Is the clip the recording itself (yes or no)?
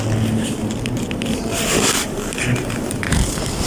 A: no